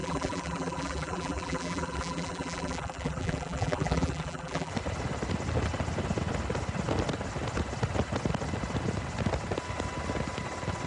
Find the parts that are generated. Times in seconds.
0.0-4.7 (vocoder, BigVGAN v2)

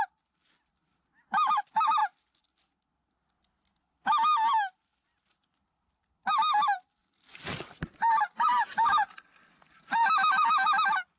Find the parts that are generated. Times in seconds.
0.0-2.0 (vocoder, BigVGAN v2); 6.3-11.2

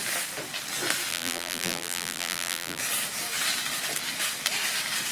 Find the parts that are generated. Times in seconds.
1.1-2.8 (vocoder, BigVGAN v2)

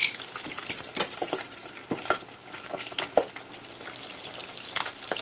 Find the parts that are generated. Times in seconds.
0.0-3.1 (vocoder, BigVGAN v2); 4.4-5.2

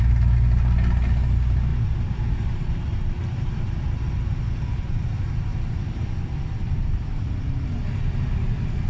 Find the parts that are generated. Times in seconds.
1.7-4.1 (vocoder, BigVGAN v2); 5.5-7.2

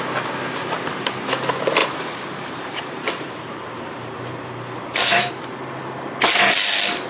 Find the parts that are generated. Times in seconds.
1.8-5.3 (vocoder, BigVGAN v2)

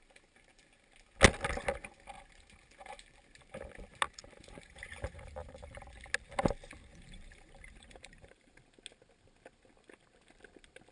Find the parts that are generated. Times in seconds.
4.4-5.8 (vocoder, BigVGAN v2); 6.9-8.6